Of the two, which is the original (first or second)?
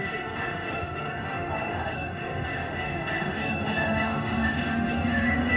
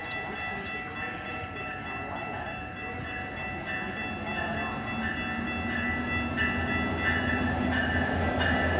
second